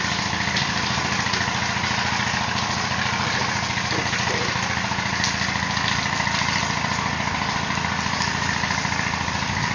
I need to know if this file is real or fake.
real